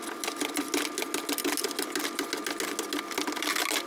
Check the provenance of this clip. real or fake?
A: real